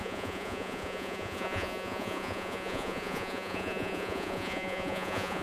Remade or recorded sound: remade